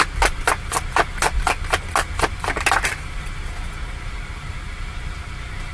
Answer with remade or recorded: recorded